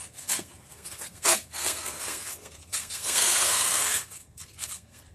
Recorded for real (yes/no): no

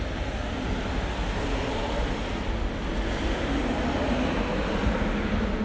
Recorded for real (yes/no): yes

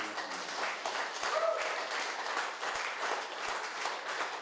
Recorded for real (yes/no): yes